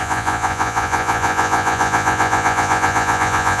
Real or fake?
fake